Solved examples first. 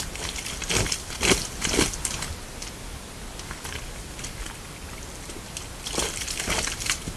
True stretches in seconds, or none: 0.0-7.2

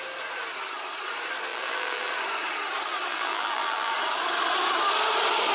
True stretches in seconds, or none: 0.0-1.5; 2.1-3.1; 3.9-5.5

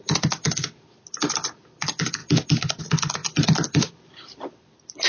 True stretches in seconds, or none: 0.0-1.1; 2.2-2.8

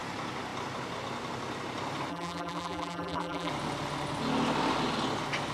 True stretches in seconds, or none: 0.0-2.1; 3.5-5.5

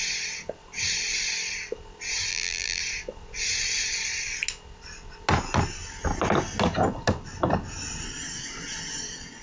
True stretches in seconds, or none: 0.0-2.3; 2.8-9.4